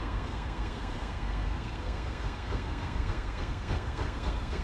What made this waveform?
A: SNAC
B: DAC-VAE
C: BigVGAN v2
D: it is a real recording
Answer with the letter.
A